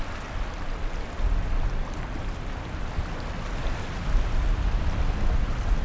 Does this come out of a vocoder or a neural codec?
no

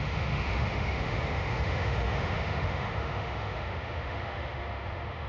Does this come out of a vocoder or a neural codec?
yes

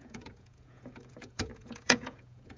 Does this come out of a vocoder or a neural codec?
yes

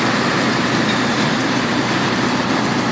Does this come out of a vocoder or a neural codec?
no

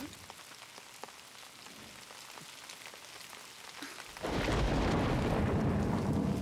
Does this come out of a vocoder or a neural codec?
no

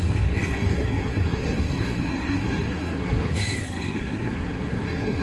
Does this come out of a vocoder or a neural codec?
yes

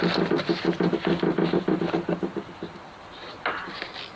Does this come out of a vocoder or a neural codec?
no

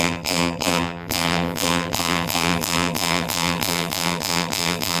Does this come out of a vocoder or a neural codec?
yes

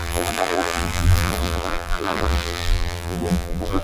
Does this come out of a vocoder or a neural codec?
yes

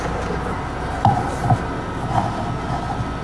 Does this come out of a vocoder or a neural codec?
no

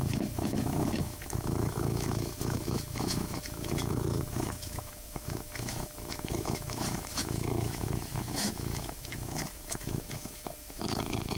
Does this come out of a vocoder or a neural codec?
yes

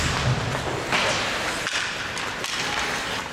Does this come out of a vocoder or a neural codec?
no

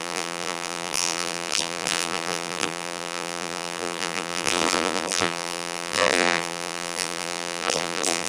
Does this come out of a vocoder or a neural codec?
yes